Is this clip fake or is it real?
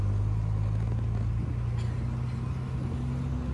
real